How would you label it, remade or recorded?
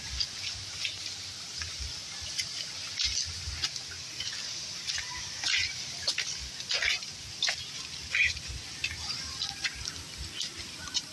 recorded